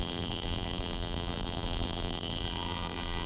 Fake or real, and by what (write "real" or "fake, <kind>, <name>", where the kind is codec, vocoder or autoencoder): fake, vocoder, BigVGAN v2